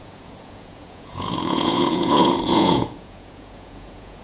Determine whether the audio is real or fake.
fake